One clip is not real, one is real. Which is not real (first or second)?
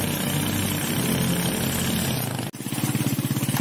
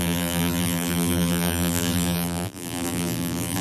second